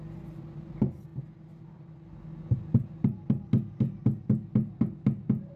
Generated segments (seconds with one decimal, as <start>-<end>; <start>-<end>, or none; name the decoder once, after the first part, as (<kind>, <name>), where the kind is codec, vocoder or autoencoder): none